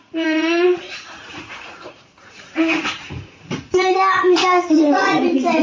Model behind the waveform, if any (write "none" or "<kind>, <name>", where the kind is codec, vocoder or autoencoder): vocoder, Vocos